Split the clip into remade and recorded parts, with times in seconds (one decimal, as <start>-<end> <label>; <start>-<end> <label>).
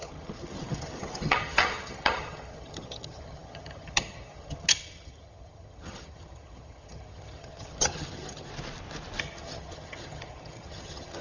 0.0-8.5 remade; 8.5-9.2 recorded; 9.2-11.2 remade